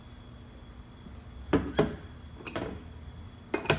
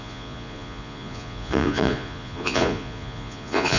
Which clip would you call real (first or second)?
first